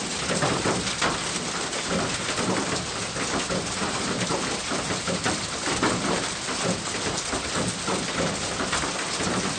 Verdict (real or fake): real